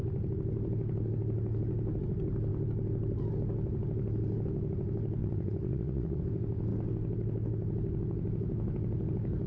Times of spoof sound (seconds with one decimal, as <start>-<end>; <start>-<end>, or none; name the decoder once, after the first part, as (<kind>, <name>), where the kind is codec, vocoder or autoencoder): 5.2-6.2 (vocoder, Vocos)